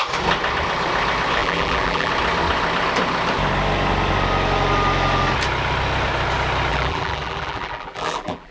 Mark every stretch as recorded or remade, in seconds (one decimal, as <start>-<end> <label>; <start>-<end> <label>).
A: 0.0-1.4 recorded; 1.4-2.1 remade; 2.1-6.7 recorded; 6.7-8.5 remade

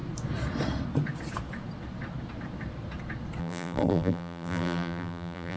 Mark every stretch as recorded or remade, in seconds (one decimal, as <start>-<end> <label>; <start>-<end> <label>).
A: 0.0-3.4 recorded; 3.4-5.6 remade

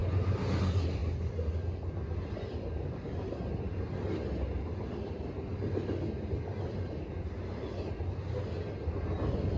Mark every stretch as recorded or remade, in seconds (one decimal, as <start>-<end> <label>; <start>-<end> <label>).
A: 0.0-9.6 recorded